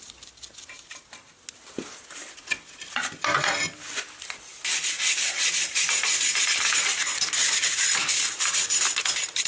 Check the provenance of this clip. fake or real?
real